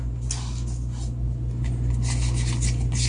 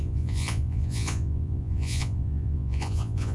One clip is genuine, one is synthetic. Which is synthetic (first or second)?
second